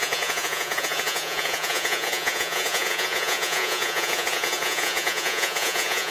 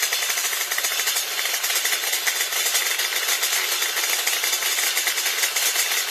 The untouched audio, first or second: second